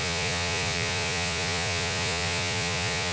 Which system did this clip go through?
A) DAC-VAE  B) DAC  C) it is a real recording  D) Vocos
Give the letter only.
D